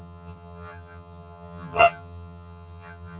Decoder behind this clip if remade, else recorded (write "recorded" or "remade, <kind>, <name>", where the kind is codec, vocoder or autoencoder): remade, vocoder, HiFi-GAN